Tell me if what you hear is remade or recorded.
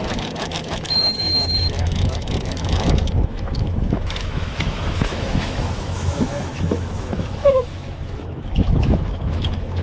remade